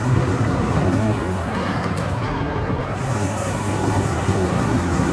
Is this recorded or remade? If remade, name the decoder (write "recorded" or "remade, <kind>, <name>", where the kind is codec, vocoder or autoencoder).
remade, codec, SNAC